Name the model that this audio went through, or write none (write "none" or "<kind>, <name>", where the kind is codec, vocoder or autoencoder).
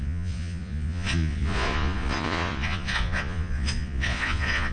vocoder, Vocos